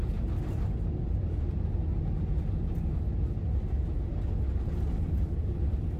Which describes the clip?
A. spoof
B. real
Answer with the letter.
B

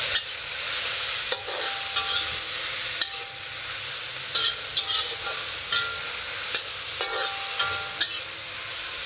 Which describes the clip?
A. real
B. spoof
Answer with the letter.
A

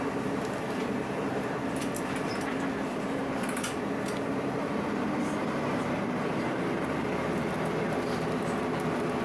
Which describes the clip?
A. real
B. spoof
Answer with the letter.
A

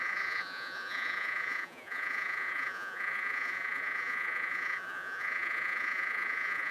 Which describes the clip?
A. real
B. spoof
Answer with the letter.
B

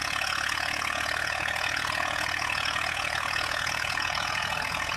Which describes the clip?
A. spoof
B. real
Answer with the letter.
A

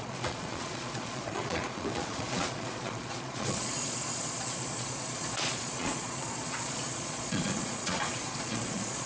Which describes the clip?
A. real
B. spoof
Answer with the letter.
B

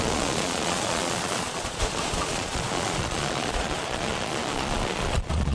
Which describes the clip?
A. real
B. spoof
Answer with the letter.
B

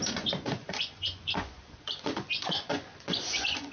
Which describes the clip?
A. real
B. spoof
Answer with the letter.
B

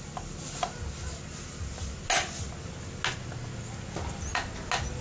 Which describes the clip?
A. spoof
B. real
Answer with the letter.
B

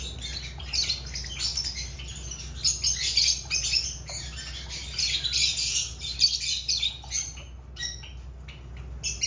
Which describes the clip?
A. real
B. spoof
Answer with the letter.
A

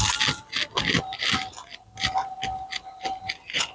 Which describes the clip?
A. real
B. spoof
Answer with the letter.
A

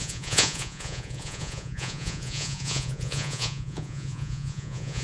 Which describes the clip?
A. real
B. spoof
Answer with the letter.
B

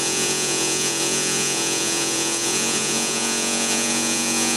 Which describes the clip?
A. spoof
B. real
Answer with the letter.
A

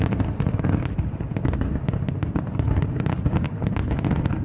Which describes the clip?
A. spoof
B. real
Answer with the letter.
B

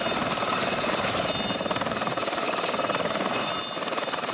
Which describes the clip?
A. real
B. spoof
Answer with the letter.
A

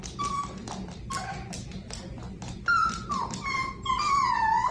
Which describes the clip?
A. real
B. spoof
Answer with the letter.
A